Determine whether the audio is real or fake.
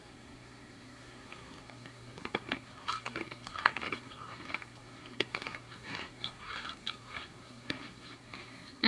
fake